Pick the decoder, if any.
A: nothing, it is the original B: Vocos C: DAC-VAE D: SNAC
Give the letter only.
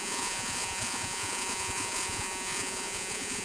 B